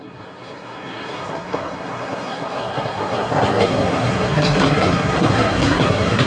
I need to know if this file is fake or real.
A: fake